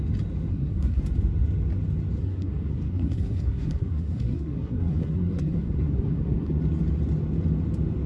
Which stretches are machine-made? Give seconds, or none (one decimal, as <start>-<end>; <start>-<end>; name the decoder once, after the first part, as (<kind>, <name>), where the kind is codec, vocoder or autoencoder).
0.5-1.0 (codec, SNAC); 2.2-6.6